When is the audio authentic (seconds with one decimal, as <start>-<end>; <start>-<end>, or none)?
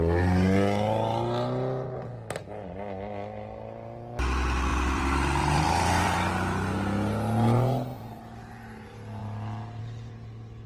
0.0-4.7; 6.3-7.9; 8.5-10.7